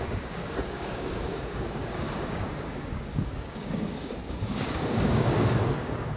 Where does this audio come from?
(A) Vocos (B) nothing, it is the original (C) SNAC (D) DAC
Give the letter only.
D